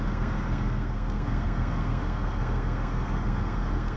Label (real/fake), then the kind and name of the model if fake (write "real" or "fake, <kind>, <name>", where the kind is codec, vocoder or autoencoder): fake, codec, SNAC